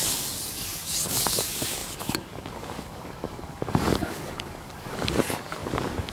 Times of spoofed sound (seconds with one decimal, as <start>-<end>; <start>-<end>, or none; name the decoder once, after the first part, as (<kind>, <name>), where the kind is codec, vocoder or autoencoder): 0.0-6.1 (codec, DAC)